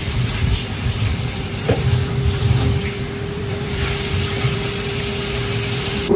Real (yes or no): no